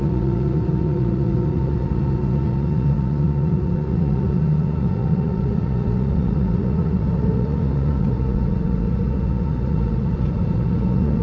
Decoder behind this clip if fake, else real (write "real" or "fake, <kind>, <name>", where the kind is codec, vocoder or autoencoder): fake, vocoder, Vocos